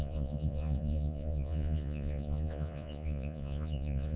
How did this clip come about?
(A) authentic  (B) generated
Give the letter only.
B